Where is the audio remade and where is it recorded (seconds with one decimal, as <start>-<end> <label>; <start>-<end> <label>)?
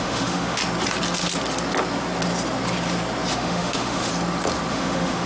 0.0-0.6 remade; 0.6-3.3 recorded; 3.3-4.1 remade; 4.1-4.7 recorded; 4.7-5.3 remade